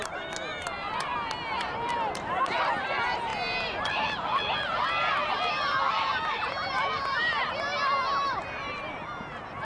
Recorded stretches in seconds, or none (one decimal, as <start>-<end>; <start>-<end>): 0.0-9.6